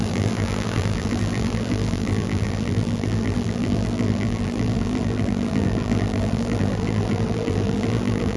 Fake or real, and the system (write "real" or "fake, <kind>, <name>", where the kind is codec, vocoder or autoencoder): fake, vocoder, BigVGAN v2